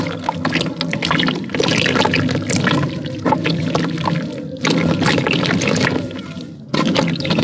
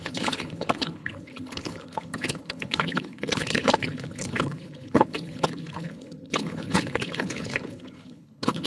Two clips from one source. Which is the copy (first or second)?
second